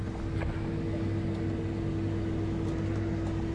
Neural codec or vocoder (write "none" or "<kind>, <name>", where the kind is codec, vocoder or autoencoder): none